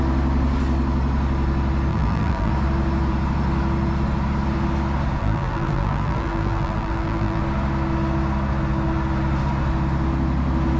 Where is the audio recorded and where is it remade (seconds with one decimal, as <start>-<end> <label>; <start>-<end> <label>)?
0.0-1.9 recorded; 1.9-2.5 remade; 2.5-5.2 recorded; 5.2-7.4 remade; 7.4-10.8 recorded